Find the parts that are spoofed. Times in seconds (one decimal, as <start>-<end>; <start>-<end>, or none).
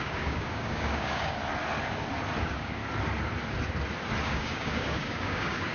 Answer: 0.0-1.4; 2.4-2.8; 4.2-5.7